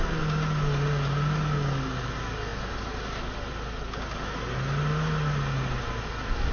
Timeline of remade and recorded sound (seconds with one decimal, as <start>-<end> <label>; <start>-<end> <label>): 0.0-6.5 recorded